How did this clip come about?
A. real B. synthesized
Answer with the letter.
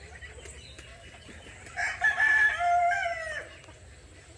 A